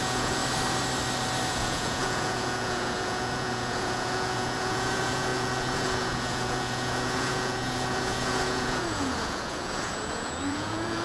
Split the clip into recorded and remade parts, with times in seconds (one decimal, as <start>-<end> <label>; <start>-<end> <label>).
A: 0.0-0.4 remade; 0.4-1.5 recorded; 1.5-11.0 remade